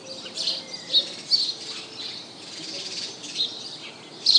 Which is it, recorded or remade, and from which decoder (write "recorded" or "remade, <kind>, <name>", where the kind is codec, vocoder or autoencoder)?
recorded